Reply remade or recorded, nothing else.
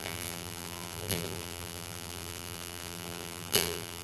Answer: remade